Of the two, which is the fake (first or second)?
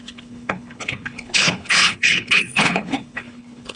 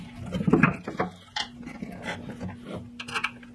first